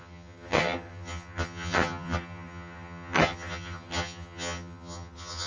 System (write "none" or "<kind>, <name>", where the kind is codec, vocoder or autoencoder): vocoder, HiFi-GAN